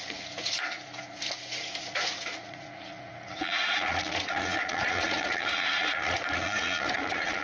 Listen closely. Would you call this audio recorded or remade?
remade